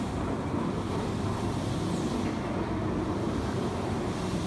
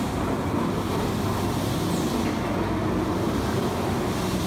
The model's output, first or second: first